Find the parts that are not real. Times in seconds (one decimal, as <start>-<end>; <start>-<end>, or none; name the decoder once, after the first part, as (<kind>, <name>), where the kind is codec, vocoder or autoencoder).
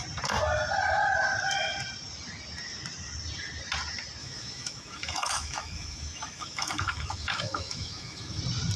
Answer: 4.2-8.4 (autoencoder, DAC-VAE)